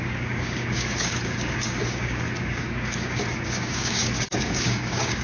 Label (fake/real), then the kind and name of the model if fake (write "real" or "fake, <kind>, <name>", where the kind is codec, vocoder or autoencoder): fake, codec, DAC